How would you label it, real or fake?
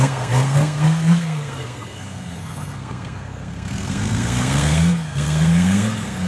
fake